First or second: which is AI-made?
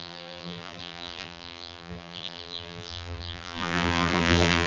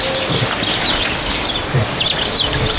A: first